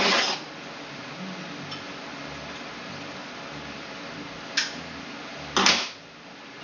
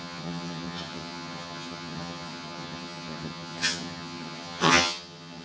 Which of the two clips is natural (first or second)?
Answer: first